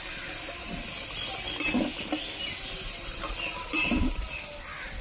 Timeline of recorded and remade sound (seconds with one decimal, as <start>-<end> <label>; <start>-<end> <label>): 0.0-1.9 recorded; 1.9-5.0 remade